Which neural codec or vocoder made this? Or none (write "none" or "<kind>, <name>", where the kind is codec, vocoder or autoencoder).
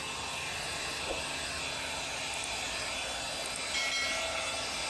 none